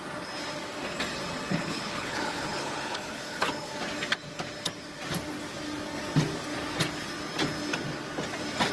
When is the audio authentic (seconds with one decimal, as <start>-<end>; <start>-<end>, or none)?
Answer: 0.0-1.5; 3.7-8.7